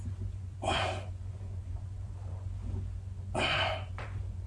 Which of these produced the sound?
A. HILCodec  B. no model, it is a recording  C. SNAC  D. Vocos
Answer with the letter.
D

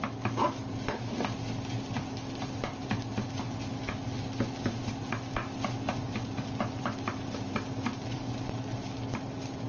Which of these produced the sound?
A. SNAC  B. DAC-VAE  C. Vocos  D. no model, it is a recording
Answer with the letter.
D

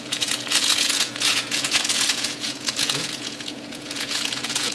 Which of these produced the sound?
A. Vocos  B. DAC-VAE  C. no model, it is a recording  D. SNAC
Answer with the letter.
A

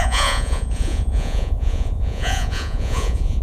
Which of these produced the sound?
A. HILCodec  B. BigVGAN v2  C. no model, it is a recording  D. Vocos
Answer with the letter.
D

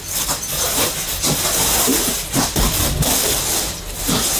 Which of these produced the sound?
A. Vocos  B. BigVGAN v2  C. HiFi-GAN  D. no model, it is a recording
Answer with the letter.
D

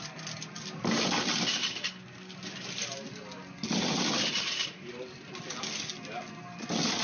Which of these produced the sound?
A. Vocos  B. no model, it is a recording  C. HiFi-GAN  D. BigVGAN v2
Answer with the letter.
B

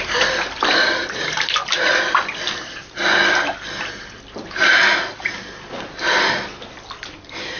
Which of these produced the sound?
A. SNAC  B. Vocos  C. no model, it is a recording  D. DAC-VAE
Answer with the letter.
C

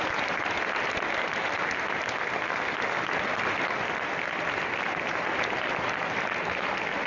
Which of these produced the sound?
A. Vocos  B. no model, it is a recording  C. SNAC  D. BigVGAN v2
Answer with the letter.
B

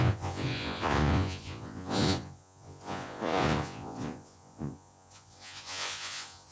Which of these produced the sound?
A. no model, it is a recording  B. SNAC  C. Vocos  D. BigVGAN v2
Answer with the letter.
C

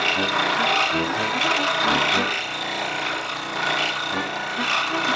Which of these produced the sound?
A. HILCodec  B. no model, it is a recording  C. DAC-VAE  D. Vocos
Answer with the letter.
B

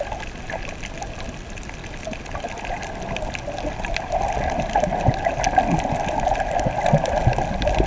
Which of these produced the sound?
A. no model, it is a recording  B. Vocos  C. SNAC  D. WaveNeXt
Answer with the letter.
A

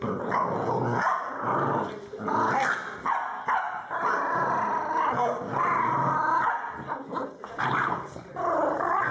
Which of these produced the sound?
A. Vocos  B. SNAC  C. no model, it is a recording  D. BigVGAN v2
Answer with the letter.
C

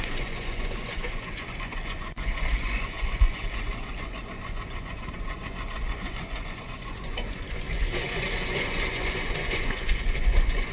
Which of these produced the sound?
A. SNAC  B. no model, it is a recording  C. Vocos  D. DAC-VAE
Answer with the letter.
C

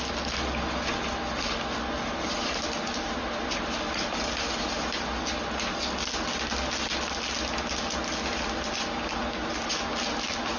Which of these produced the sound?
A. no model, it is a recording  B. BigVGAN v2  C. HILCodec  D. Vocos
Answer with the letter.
A